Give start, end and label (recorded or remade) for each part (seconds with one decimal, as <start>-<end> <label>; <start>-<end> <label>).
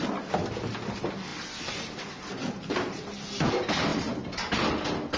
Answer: 0.0-5.2 recorded